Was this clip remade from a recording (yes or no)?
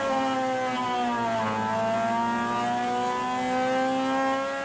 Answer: no